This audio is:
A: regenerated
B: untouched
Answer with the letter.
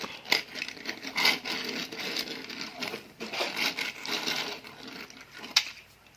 B